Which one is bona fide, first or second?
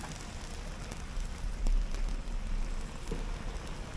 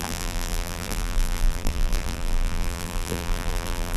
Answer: first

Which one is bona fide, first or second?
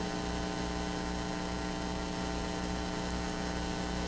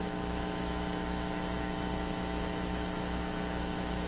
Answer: first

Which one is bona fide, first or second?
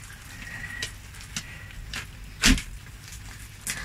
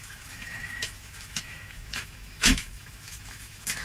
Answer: first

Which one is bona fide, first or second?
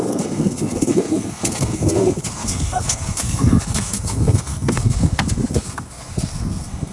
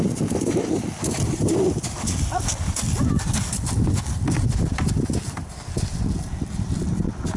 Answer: second